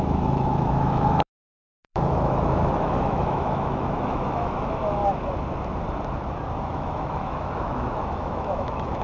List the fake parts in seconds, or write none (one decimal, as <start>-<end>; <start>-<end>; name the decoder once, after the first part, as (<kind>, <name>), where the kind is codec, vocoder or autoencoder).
0.0-5.0 (autoencoder, DAC-VAE); 6.6-9.0